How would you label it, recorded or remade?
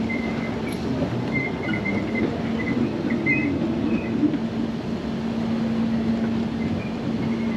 recorded